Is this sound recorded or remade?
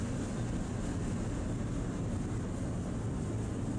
recorded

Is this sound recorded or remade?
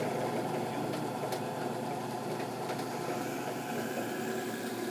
remade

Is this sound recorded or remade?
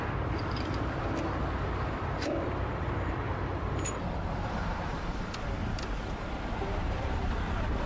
remade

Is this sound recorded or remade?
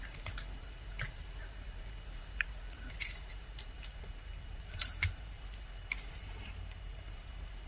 remade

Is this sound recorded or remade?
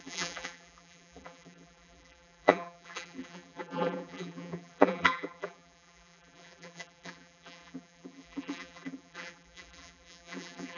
remade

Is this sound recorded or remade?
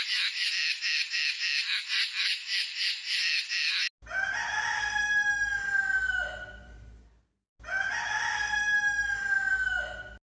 recorded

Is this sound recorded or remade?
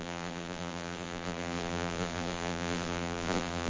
remade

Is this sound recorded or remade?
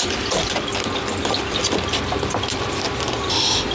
remade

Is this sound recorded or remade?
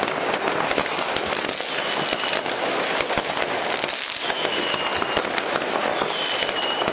recorded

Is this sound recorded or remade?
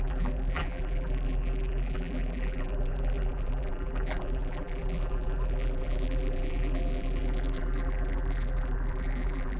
remade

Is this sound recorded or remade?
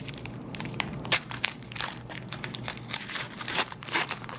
remade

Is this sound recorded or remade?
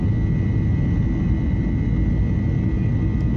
recorded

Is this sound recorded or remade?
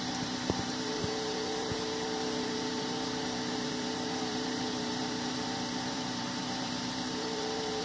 remade